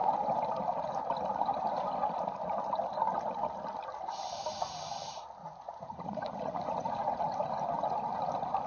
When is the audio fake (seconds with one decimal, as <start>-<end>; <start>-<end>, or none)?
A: 5.4-7.2